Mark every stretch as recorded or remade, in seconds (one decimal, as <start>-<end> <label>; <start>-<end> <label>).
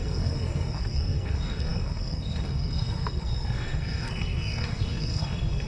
0.0-5.7 remade